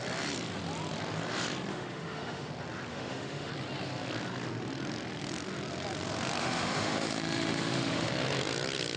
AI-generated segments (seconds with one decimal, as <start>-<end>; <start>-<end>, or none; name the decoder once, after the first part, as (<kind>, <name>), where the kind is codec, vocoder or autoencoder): 1.7-2.5 (autoencoder, DAC-VAE); 2.9-3.5; 6.4-8.1